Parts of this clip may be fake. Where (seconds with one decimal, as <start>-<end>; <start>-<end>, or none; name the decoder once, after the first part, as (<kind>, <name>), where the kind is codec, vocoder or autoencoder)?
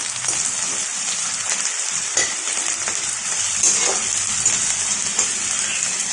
none